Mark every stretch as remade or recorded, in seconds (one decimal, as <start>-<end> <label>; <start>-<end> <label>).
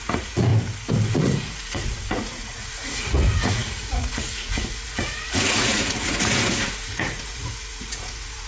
0.0-0.5 remade; 0.5-1.1 recorded; 1.1-8.5 remade